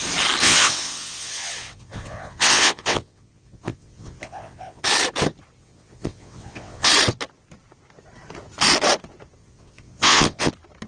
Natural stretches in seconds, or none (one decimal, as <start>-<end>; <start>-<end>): 0.0-0.4; 4.8-5.6; 6.9-9.4; 10.5-10.9